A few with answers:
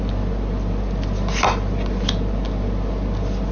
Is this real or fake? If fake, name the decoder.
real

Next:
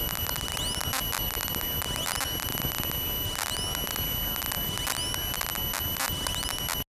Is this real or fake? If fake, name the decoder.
real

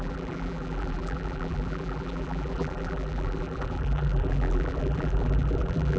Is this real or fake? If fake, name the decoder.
fake, vocoder, BigVGAN v2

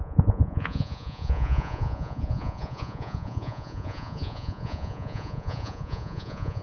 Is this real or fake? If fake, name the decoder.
fake, vocoder, Vocos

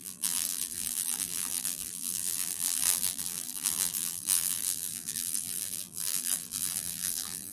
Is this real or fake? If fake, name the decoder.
fake, vocoder, BigVGAN v2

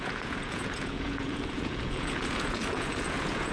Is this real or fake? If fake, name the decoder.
fake, vocoder, Vocos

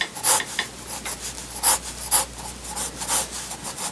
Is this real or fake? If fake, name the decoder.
real